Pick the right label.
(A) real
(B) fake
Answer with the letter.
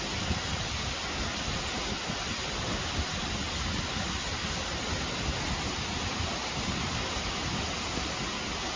A